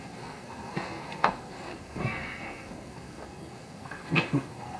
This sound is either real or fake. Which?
fake